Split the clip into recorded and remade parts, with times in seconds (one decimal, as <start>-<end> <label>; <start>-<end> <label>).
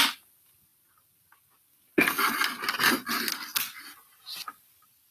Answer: 0.0-5.1 recorded